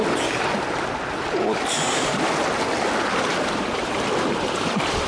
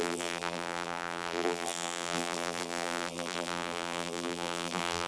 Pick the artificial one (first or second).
second